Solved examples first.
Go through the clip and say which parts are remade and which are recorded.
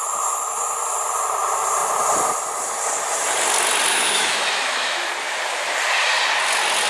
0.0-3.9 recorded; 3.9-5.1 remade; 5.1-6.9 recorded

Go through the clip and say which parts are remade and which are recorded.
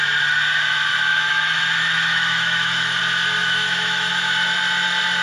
0.0-1.1 recorded; 1.1-3.0 remade; 3.0-3.4 recorded; 3.4-4.1 remade; 4.1-5.2 recorded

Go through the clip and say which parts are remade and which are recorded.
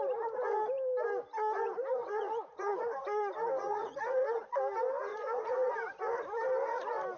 0.0-2.0 recorded; 2.0-2.8 remade; 2.8-3.6 recorded; 3.6-4.6 remade; 4.6-5.1 recorded; 5.1-5.7 remade; 5.7-7.2 recorded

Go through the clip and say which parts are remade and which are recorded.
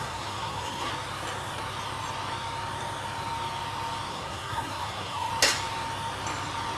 0.0-0.9 remade; 0.9-4.1 recorded; 4.1-5.3 remade; 5.3-6.8 recorded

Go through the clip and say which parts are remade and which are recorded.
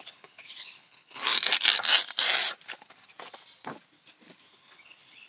0.0-1.3 remade; 1.3-4.5 recorded; 4.5-5.3 remade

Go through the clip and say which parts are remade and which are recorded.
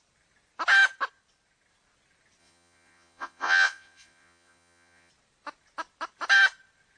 0.0-2.4 recorded; 2.4-5.1 remade; 5.1-7.0 recorded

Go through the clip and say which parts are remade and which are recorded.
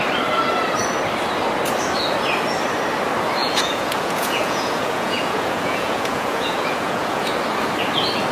0.0-3.4 recorded; 3.4-7.3 remade; 7.3-8.3 recorded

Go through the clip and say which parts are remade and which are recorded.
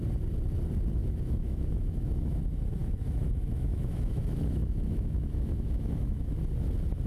0.0-1.0 recorded; 1.0-2.4 remade; 2.4-2.8 recorded; 2.8-6.4 remade; 6.4-7.1 recorded